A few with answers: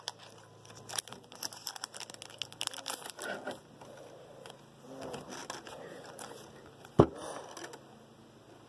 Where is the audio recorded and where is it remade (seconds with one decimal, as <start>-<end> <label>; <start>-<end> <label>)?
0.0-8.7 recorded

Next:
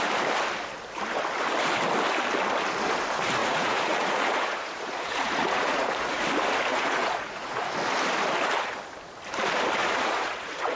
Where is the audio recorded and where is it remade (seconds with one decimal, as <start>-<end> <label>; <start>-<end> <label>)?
0.0-3.4 recorded; 3.4-6.2 remade; 6.2-6.7 recorded; 6.7-7.7 remade; 7.7-9.8 recorded; 9.8-10.8 remade

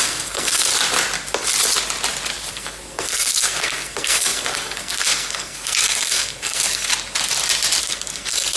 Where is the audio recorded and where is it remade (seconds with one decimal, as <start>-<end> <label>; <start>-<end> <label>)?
0.0-0.7 remade; 0.7-2.5 recorded; 2.5-6.9 remade; 6.9-7.8 recorded; 7.8-8.6 remade

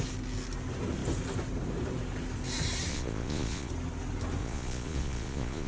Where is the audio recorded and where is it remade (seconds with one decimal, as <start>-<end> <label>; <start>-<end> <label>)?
0.0-2.9 recorded; 2.9-3.7 remade; 3.7-4.4 recorded; 4.4-5.7 remade

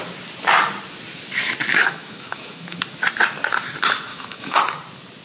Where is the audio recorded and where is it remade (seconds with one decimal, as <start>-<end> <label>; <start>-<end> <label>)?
0.0-1.7 recorded; 1.7-2.8 remade; 2.8-4.1 recorded; 4.1-4.6 remade; 4.6-5.2 recorded

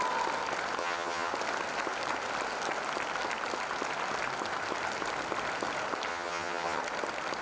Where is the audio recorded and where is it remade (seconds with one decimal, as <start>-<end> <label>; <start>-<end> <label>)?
0.0-0.8 recorded; 0.8-1.3 remade; 1.3-6.1 recorded; 6.1-6.8 remade; 6.8-7.4 recorded

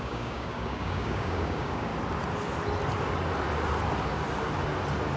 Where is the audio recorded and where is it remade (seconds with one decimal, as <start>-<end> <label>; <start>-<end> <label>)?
0.0-1.9 remade; 1.9-5.2 recorded